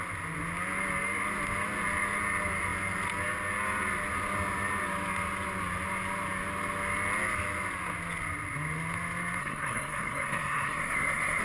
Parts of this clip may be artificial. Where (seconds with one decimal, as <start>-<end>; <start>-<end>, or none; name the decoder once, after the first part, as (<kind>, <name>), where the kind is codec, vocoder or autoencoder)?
9.4-11.4 (codec, SNAC)